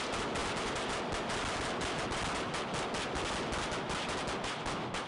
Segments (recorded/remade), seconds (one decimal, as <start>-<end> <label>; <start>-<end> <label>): 0.0-5.1 recorded